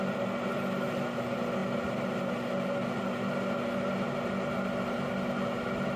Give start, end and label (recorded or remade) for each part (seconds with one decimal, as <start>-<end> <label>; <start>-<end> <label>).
0.0-6.0 recorded